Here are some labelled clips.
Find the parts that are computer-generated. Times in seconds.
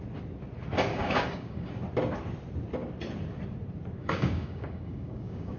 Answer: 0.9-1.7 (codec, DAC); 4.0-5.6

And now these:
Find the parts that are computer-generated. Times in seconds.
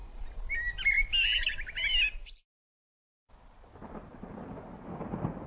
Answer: none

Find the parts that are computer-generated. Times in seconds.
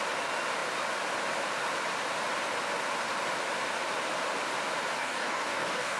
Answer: 5.0-6.0 (codec, DAC)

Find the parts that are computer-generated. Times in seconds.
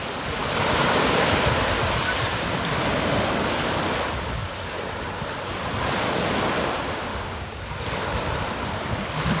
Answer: 7.1-7.6 (codec, DAC)